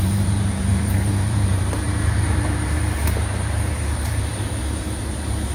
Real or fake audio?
fake